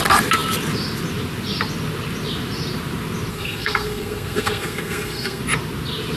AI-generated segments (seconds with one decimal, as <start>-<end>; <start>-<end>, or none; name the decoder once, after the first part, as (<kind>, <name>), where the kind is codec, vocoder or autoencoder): 3.3-5.4 (codec, SNAC)